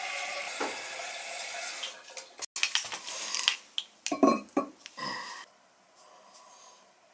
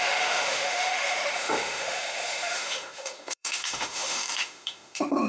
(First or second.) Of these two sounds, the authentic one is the first